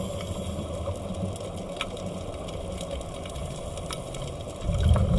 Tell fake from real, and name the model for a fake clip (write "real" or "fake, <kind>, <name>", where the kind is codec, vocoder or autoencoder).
real